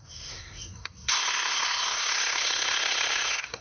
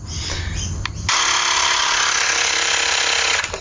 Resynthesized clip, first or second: first